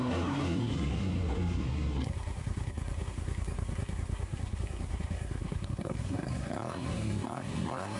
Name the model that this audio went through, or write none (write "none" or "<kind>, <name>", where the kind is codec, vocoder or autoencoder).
codec, SNAC